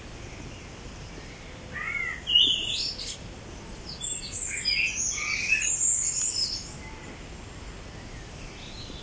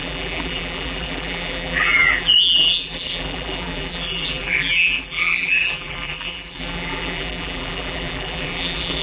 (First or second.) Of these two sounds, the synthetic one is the second